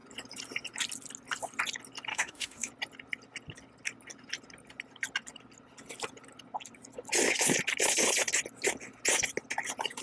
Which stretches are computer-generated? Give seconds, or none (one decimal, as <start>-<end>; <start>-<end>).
2.1-2.7